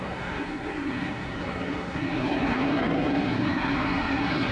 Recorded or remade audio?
remade